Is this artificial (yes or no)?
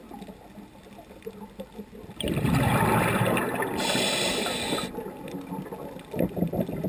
no